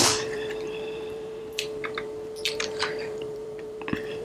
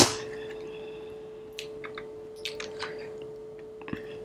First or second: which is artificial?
first